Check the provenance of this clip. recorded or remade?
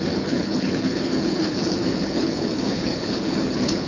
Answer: remade